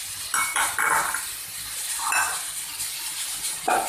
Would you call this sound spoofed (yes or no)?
yes